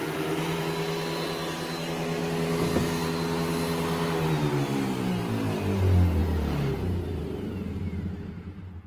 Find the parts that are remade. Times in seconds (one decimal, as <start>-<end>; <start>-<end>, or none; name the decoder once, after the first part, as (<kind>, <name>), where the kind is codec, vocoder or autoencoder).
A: 0.0-0.6 (vocoder, BigVGAN v2); 6.2-7.8